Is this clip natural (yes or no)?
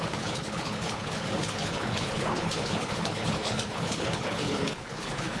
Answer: no